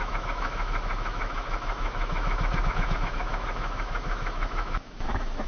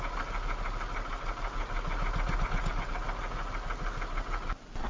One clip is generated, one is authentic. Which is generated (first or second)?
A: first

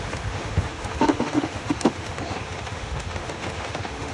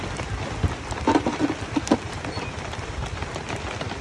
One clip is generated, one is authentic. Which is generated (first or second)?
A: first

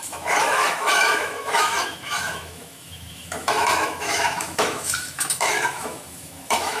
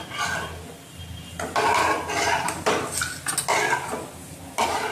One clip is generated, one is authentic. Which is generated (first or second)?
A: first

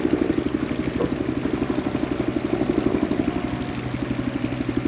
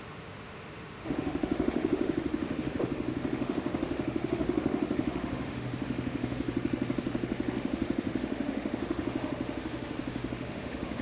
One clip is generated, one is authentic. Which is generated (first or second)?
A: second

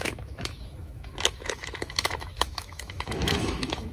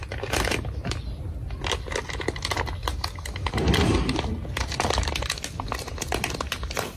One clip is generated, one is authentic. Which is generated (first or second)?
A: first